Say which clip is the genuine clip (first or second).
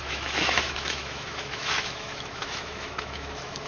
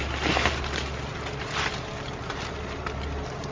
second